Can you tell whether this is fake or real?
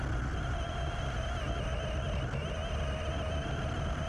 real